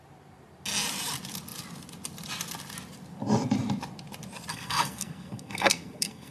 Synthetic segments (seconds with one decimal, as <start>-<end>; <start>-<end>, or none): 4.5-6.3